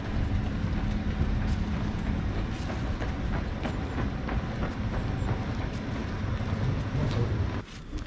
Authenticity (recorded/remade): recorded